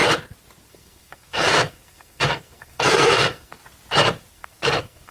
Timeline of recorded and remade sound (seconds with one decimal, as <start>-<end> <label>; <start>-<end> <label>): 0.0-0.7 recorded; 0.7-3.6 remade; 3.6-4.3 recorded; 4.3-5.1 remade